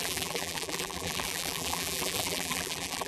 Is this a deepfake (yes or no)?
yes